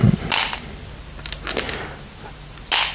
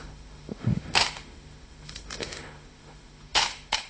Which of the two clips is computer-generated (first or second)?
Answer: second